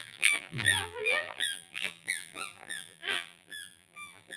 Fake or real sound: fake